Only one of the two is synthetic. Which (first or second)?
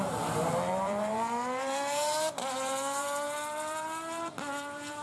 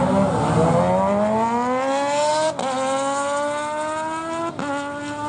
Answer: first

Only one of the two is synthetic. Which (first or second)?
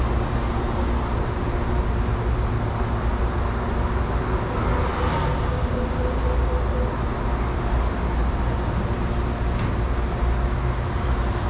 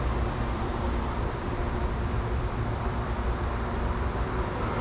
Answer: second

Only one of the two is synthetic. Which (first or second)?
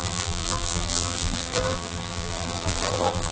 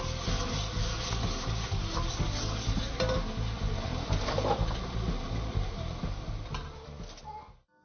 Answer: first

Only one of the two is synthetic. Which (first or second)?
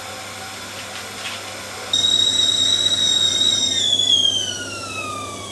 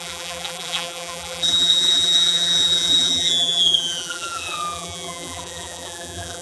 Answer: second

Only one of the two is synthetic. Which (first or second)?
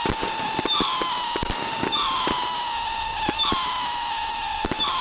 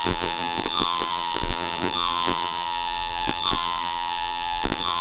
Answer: second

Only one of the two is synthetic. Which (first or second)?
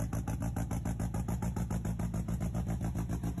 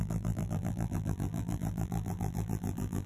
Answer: second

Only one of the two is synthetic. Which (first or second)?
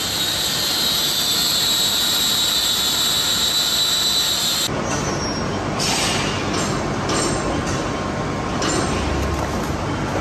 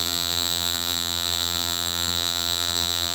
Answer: second